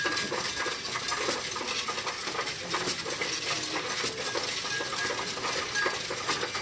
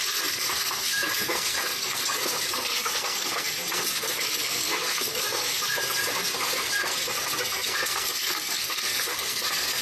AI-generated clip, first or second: second